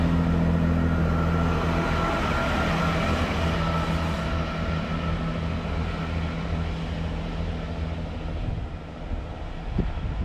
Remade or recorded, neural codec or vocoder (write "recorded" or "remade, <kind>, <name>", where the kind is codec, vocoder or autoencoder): recorded